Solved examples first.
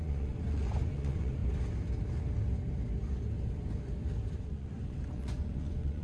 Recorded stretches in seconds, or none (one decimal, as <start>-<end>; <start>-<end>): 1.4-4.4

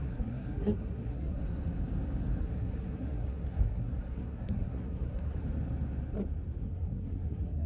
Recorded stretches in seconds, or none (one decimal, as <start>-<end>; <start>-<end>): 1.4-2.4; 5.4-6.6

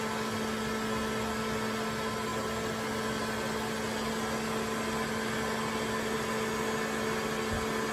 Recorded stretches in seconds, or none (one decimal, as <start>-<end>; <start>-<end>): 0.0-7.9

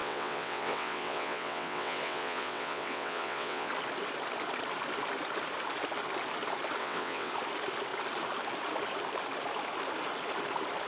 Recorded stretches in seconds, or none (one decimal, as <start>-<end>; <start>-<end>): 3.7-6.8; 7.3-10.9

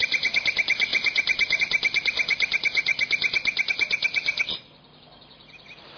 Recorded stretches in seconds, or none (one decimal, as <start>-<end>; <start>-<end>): 0.9-1.6; 2.9-3.7

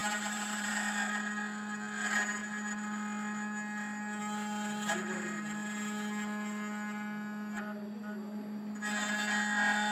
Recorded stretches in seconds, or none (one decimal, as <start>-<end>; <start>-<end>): 0.7-9.9